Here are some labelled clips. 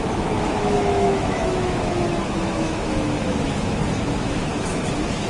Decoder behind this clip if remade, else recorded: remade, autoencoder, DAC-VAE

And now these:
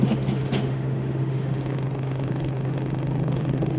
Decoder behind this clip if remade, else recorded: remade, autoencoder, DAC-VAE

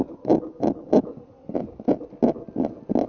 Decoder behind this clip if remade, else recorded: recorded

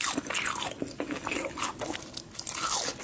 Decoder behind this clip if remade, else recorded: recorded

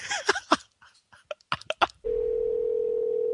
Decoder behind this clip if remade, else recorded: recorded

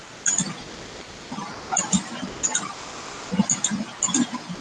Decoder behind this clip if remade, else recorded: recorded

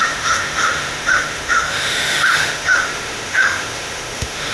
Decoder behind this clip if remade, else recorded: remade, autoencoder, DAC-VAE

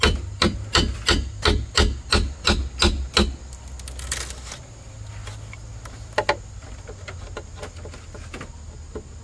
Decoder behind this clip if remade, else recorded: recorded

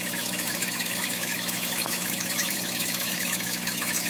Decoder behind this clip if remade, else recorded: remade, autoencoder, DAC-VAE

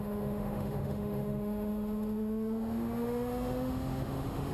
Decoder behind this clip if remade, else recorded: remade, autoencoder, DAC-VAE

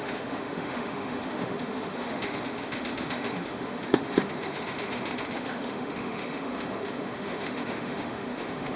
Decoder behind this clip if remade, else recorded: remade, autoencoder, DAC-VAE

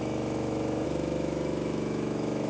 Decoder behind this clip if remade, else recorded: remade, autoencoder, DAC-VAE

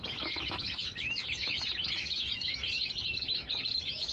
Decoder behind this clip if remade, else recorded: remade, autoencoder, DAC-VAE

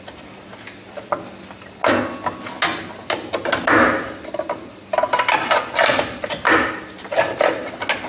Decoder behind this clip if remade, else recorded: recorded